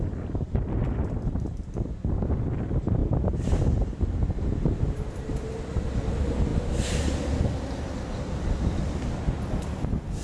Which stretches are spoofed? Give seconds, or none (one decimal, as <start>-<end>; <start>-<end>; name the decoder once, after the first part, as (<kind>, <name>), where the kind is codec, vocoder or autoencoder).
none